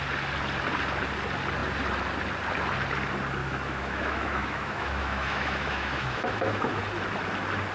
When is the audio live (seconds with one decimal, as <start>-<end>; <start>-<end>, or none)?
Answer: 0.0-3.4; 6.8-7.7